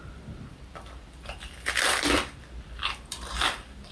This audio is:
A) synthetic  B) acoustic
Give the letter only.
A